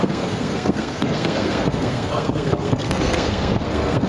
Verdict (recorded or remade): remade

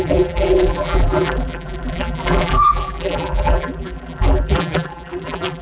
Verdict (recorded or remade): remade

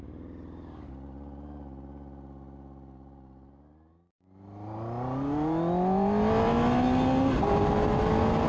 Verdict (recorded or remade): recorded